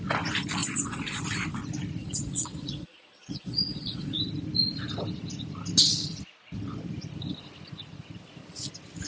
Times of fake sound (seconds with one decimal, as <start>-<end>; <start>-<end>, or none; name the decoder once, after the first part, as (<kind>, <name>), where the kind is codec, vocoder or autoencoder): 0.6-1.2 (vocoder, Vocos); 2.0-4.2